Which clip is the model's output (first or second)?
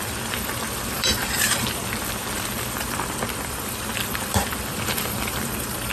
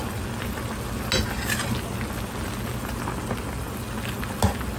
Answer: first